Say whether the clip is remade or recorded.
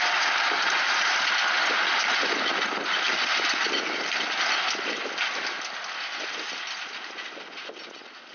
recorded